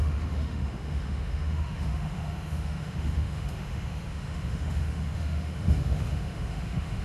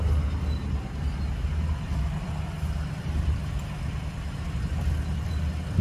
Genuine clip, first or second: second